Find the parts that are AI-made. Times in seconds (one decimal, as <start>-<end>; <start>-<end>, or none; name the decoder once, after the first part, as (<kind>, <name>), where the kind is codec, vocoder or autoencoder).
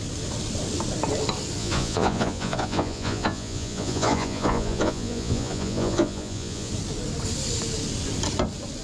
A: 1.6-6.7 (vocoder, Vocos)